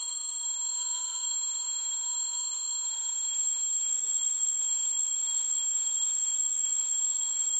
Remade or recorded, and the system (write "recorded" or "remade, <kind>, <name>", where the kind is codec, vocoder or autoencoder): remade, autoencoder, DAC-VAE